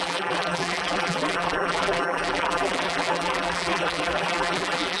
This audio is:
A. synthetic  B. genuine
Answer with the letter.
A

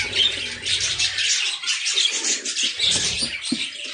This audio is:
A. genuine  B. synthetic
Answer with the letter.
A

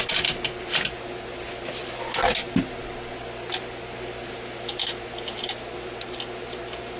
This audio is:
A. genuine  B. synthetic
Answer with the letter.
A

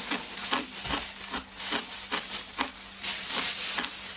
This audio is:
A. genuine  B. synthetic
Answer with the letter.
A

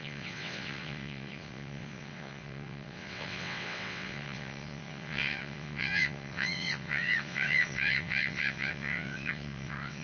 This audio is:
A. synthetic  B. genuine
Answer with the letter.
A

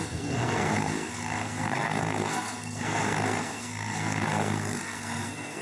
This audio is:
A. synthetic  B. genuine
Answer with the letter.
A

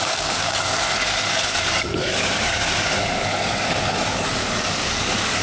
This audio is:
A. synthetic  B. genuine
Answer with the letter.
A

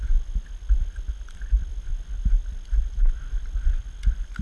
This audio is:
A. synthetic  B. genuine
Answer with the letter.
B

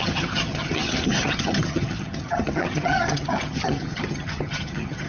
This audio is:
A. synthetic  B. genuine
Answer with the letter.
A